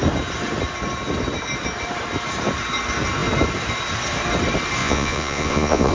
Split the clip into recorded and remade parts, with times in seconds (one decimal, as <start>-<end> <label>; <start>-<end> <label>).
0.0-4.8 recorded; 4.8-5.9 remade